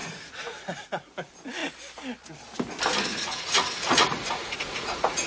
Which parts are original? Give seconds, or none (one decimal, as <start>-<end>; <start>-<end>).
1.1-3.1